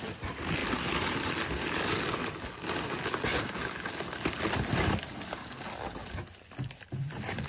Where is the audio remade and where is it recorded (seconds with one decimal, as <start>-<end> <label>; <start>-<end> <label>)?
0.0-7.5 recorded